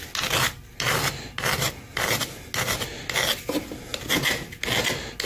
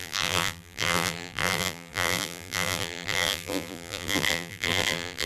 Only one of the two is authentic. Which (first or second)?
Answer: first